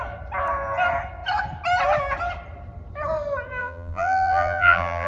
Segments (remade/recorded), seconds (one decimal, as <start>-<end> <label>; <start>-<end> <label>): 0.0-3.6 recorded; 3.6-5.1 remade